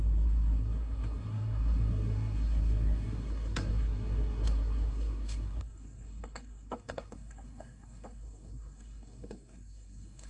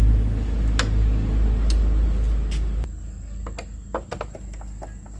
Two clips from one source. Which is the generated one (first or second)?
first